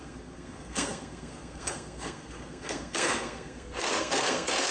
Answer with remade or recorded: remade